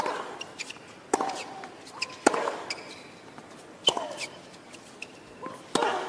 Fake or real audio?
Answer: real